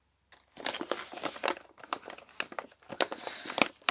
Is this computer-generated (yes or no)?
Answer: no